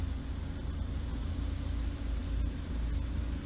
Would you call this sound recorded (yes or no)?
yes